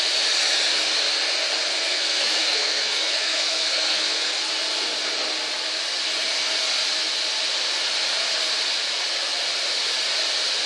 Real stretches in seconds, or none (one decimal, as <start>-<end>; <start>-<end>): 0.0-1.7; 4.5-10.7